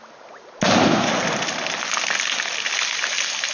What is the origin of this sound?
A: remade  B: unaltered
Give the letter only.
B